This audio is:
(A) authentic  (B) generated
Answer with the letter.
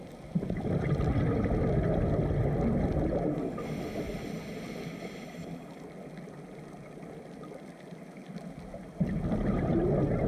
A